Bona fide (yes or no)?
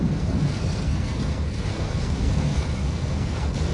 no